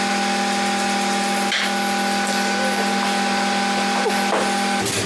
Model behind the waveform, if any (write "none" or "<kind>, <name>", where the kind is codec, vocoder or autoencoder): none